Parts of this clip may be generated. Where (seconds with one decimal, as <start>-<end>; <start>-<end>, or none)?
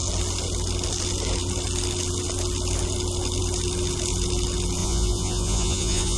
4.8-6.2